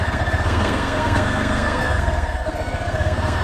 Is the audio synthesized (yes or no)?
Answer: yes